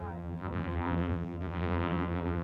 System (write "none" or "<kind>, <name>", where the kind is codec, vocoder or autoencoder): vocoder, BigVGAN v2